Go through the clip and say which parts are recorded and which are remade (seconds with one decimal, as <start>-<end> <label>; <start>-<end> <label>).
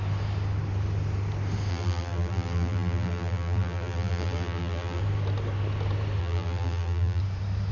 0.0-1.7 recorded; 1.7-5.0 remade; 5.0-6.2 recorded; 6.2-7.2 remade; 7.2-7.7 recorded